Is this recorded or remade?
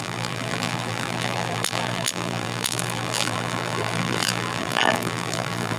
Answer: remade